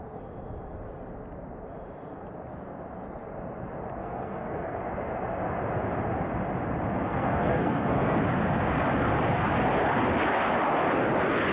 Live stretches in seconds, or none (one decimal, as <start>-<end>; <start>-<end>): 0.0-4.0; 4.8-7.1; 8.2-11.5